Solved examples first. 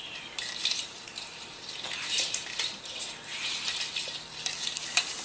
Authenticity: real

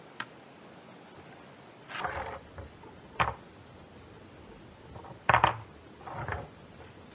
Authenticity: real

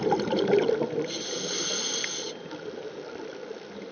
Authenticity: real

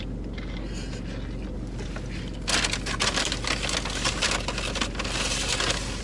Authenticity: real